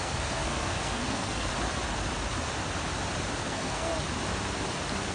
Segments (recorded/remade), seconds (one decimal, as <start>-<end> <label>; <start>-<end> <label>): 0.0-1.5 remade; 1.5-3.4 recorded; 3.4-3.9 remade; 3.9-5.1 recorded